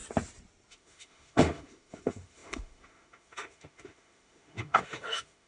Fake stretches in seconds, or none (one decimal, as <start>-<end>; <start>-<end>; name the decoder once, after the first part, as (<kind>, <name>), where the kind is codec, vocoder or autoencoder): 0.7-5.5 (autoencoder, DAC-VAE)